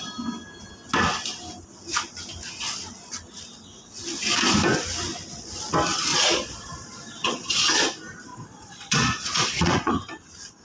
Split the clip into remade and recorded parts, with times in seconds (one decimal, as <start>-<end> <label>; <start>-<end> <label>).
0.0-6.1 recorded; 6.1-7.7 remade; 7.7-8.3 recorded; 8.3-9.9 remade; 9.9-10.6 recorded